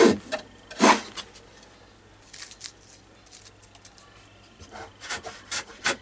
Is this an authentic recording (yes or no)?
yes